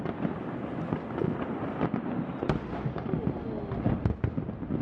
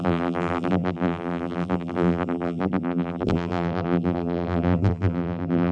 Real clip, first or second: first